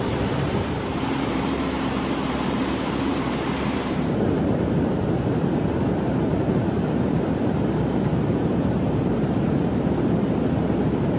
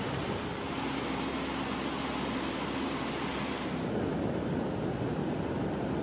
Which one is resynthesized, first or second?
first